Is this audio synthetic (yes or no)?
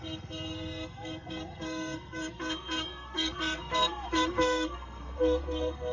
yes